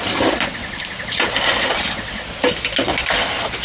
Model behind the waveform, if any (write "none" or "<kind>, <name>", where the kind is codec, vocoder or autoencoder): none